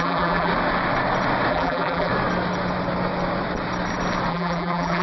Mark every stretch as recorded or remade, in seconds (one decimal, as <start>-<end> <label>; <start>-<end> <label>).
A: 0.0-0.5 remade; 0.5-1.5 recorded; 1.5-2.1 remade; 2.1-4.3 recorded; 4.3-5.0 remade